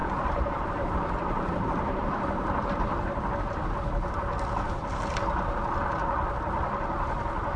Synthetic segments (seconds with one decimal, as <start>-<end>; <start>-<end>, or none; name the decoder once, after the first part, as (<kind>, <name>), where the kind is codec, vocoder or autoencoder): 0.0-3.2 (vocoder, BigVGAN v2)